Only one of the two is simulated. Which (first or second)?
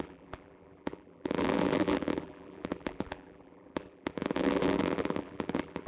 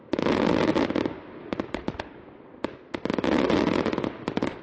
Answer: first